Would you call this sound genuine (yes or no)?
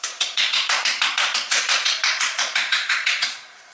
no